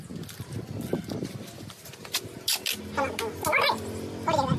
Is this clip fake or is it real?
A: real